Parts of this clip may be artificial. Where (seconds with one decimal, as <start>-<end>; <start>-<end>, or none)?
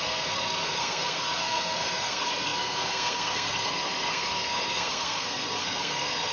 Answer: 0.0-6.3